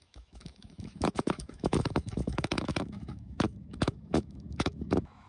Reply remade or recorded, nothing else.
remade